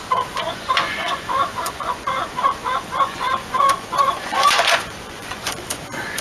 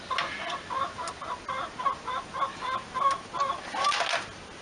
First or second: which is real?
second